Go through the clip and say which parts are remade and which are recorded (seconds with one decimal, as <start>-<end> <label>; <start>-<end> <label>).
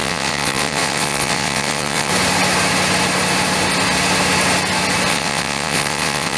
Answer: 0.0-2.1 remade; 2.1-5.1 recorded; 5.1-6.4 remade